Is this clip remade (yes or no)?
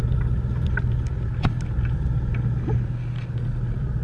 no